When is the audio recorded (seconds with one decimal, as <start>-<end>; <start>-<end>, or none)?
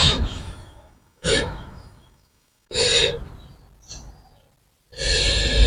2.8-5.7